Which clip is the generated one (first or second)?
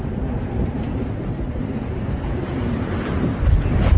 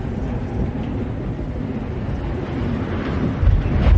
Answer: first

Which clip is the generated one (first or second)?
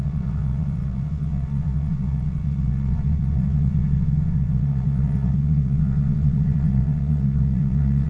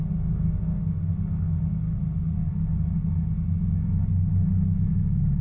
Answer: first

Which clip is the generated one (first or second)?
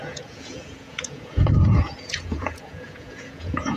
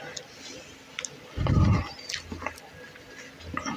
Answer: first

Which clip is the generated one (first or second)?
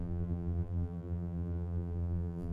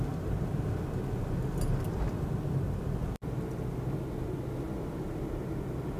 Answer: first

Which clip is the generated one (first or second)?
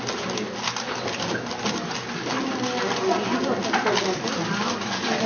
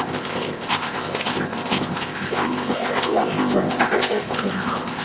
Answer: second